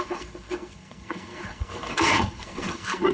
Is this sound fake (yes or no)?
yes